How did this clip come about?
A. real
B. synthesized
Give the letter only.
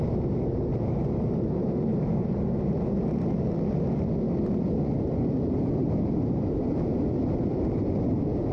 A